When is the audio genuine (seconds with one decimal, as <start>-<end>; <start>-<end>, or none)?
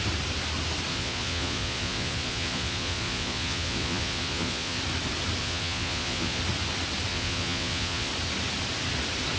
0.0-0.9; 4.8-5.4; 6.4-7.1; 8.1-9.4